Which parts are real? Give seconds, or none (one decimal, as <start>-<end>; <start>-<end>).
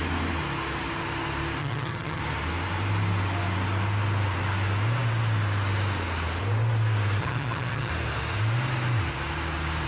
0.0-1.6; 2.2-7.2; 7.9-9.9